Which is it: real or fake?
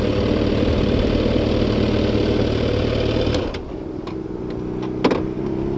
real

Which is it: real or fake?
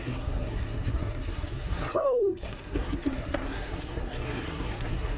fake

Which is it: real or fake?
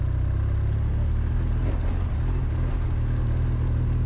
real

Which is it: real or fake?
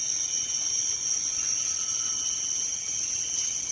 fake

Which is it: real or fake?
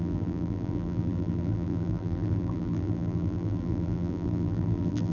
fake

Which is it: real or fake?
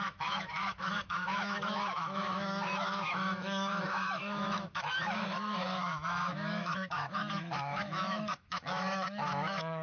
fake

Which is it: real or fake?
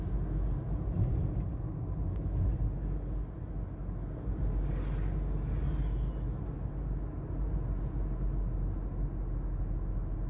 real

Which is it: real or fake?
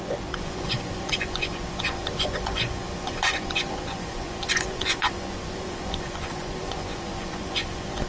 fake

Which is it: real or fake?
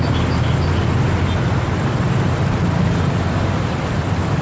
real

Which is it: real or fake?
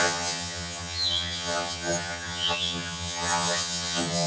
fake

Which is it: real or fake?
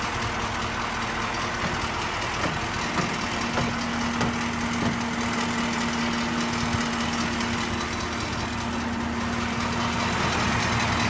real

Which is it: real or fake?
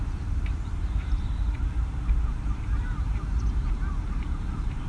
fake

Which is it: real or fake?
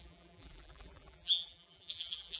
fake